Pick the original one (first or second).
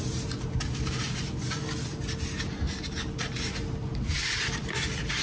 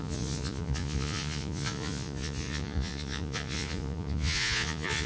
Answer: first